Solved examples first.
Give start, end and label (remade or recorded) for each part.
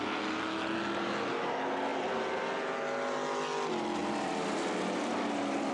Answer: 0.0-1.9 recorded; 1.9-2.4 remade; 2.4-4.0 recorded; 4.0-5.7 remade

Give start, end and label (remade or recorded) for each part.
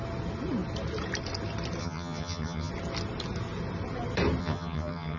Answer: 0.0-1.8 recorded; 1.8-2.7 remade; 2.7-4.4 recorded; 4.4-5.2 remade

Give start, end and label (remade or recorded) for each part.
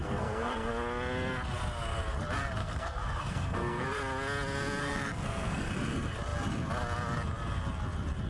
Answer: 0.0-0.7 remade; 0.7-2.6 recorded; 2.6-4.0 remade; 4.0-4.8 recorded; 4.8-5.7 remade; 5.7-8.3 recorded